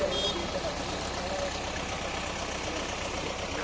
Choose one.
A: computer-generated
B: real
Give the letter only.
B